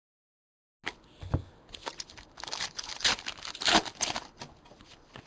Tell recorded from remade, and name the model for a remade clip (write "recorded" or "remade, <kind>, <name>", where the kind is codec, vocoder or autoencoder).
recorded